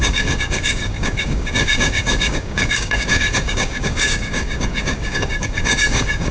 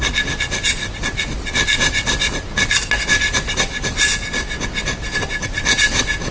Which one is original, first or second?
second